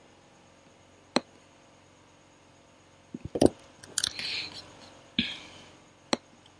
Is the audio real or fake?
real